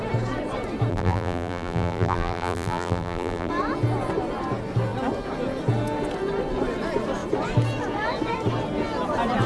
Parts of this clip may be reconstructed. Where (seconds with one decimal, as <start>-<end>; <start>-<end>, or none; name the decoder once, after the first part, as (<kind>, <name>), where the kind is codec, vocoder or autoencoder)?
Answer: 0.9-3.5 (vocoder, BigVGAN v2)